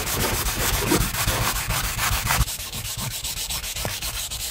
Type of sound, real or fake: fake